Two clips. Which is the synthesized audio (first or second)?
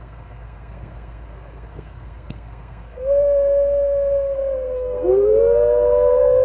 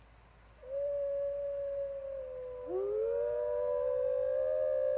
first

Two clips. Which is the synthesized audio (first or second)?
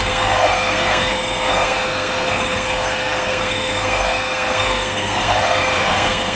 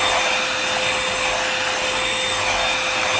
first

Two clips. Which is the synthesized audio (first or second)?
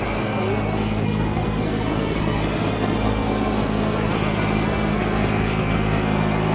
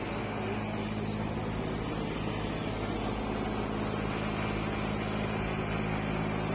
first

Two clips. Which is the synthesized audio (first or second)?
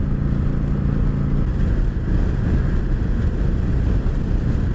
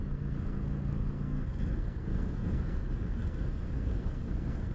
second